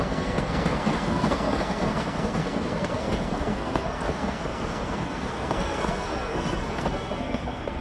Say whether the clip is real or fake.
fake